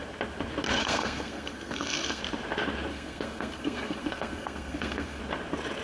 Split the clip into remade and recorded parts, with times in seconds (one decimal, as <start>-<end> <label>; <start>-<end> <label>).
0.0-0.8 recorded; 0.8-2.2 remade; 2.2-2.9 recorded; 2.9-5.2 remade; 5.2-5.8 recorded